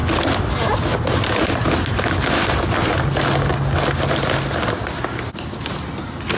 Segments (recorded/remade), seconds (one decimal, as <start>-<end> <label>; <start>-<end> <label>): 0.0-6.4 recorded